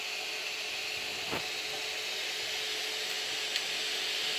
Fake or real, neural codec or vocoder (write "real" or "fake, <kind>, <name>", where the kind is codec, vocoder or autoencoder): real